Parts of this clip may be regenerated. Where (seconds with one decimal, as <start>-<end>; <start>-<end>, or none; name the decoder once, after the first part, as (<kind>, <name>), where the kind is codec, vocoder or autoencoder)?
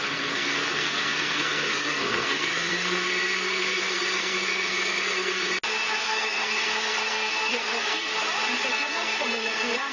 0.0-5.4 (codec, SNAC); 6.0-8.1; 8.7-9.9